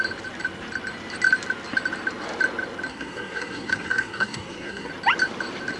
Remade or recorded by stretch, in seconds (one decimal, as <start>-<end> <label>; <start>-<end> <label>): 0.0-2.9 recorded; 2.9-4.9 remade; 4.9-5.8 recorded